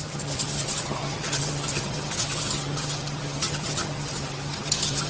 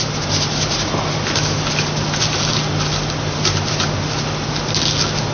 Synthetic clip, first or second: first